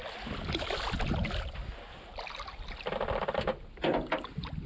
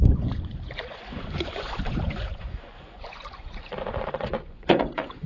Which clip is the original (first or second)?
first